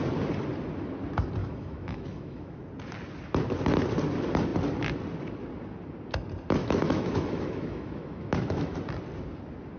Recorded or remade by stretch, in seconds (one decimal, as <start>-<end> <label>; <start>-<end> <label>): 0.0-1.4 recorded; 1.4-2.6 remade; 2.6-6.6 recorded; 6.6-8.8 remade; 8.8-9.8 recorded